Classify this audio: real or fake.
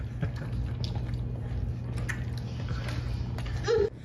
real